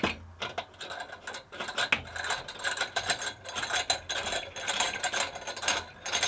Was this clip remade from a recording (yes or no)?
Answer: no